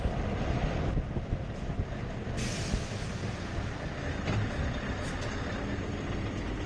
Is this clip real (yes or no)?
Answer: yes